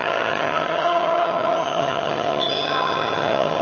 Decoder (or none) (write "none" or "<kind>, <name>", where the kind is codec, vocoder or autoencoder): vocoder, HiFi-GAN